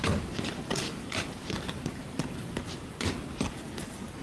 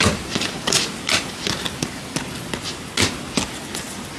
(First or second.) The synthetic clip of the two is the first